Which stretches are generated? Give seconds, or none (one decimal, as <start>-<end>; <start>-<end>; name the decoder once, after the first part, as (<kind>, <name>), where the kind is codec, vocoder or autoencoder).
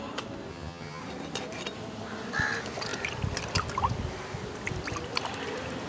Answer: 0.5-1.0 (vocoder, HiFi-GAN)